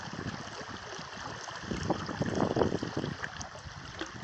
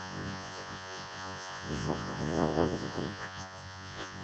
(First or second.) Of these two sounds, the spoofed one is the second